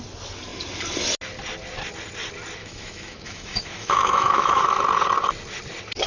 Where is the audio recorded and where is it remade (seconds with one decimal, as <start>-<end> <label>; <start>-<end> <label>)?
0.0-2.6 recorded; 2.6-4.6 remade; 4.6-6.1 recorded